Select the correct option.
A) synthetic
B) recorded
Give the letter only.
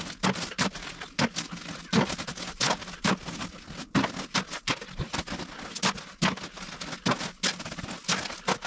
B